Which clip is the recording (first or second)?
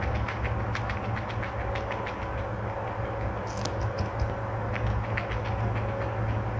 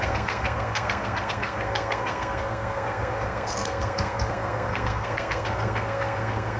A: first